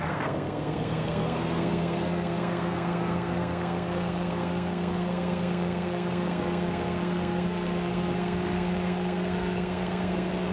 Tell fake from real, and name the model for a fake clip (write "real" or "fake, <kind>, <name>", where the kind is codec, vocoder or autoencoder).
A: fake, codec, SNAC